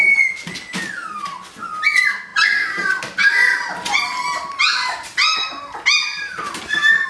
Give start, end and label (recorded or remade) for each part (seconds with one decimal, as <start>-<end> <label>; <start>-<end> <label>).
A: 0.0-7.1 recorded